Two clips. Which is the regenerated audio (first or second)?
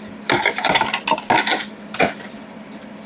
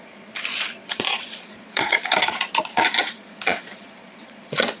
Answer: second